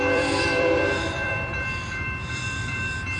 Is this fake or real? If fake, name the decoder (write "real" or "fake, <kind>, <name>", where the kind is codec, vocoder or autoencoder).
fake, vocoder, BigVGAN v2